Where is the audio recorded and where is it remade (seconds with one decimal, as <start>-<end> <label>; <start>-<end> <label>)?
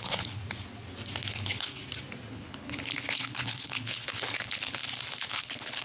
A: 0.0-0.4 remade; 0.4-1.2 recorded; 1.2-1.8 remade; 1.8-2.3 recorded; 2.3-4.8 remade; 4.8-5.3 recorded; 5.3-5.8 remade